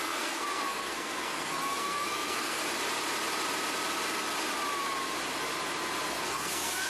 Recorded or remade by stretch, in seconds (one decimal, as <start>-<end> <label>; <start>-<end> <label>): 0.0-2.6 remade; 2.6-6.1 recorded; 6.1-6.9 remade